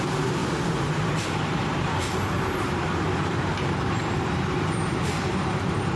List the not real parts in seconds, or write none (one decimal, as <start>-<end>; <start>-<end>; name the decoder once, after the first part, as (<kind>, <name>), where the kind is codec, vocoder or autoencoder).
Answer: 0.0-6.0 (vocoder, BigVGAN v2)